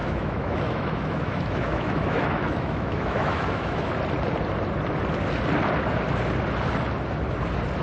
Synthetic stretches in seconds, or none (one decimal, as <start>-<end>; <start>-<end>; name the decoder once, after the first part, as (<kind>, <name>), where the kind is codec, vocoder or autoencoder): 0.0-3.9 (autoencoder, DAC-VAE)